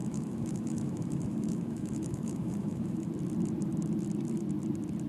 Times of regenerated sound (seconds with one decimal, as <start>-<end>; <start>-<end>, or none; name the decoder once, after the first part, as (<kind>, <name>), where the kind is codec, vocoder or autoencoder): 0.0-3.1 (autoencoder, DAC-VAE)